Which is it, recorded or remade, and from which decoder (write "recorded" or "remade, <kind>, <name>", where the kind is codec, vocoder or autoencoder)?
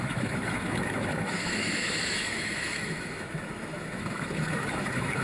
remade, autoencoder, DAC-VAE